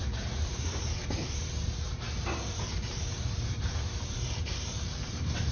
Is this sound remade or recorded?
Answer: remade